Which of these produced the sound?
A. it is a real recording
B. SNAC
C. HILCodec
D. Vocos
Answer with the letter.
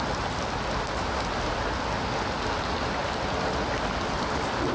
A